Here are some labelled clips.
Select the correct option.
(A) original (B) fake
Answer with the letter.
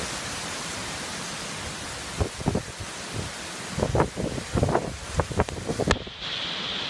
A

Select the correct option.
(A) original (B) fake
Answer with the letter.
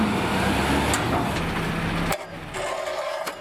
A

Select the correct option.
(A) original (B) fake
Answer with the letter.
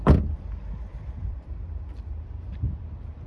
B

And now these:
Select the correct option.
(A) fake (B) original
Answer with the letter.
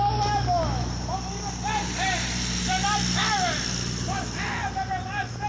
B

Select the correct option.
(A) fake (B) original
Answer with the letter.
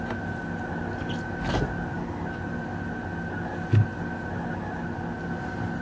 B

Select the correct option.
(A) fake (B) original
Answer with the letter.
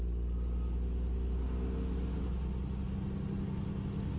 B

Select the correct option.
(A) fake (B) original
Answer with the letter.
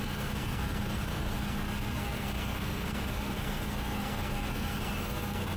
A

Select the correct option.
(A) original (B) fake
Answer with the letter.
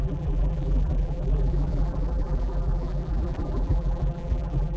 B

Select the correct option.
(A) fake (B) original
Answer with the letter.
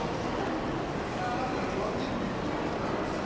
B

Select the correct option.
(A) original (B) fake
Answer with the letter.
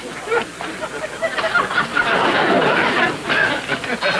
A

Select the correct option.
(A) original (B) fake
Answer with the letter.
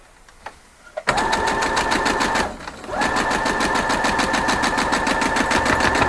A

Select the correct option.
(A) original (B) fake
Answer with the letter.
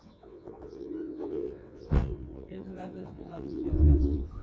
B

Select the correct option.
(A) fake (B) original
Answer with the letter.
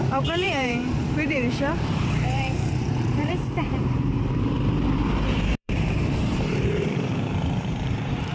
A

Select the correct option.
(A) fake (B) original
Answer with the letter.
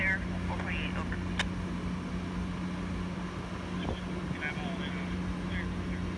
B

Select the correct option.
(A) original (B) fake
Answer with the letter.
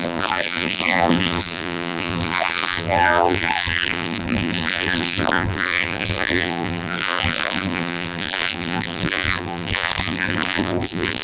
B